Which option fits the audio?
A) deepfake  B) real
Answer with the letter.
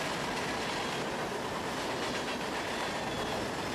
B